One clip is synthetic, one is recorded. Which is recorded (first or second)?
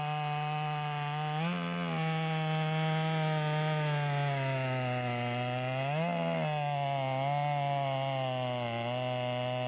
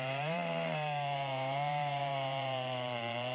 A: first